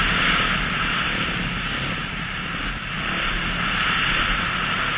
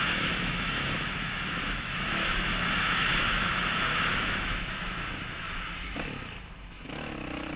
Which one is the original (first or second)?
first